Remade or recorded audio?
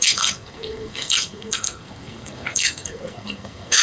remade